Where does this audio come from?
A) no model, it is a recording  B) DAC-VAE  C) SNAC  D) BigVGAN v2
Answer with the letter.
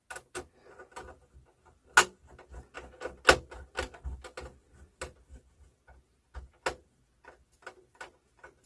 A